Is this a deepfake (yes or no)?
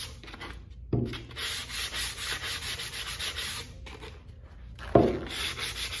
no